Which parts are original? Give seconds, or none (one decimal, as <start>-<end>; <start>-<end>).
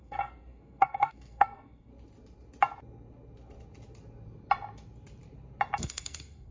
1.9-5.8